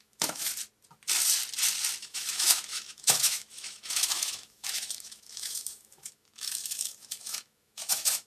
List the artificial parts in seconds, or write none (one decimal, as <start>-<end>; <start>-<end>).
0.0-0.5; 2.0-8.3